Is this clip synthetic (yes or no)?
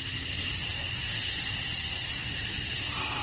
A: yes